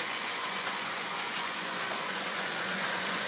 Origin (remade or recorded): remade